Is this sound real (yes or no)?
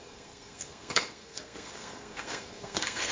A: no